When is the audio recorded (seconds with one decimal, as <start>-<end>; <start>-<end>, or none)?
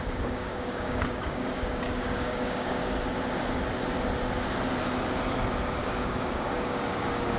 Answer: 2.8-5.8